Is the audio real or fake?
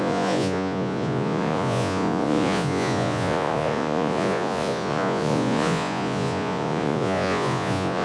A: fake